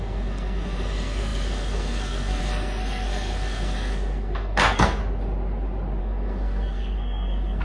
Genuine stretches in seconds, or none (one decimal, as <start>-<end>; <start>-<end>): 5.0-6.0